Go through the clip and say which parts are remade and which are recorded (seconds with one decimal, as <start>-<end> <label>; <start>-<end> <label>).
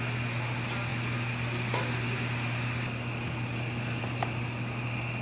0.0-5.2 recorded